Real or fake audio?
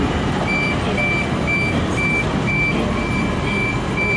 real